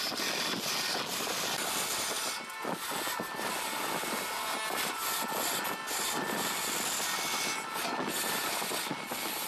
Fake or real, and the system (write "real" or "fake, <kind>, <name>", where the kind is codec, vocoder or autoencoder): real